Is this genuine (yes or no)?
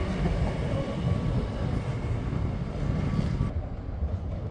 yes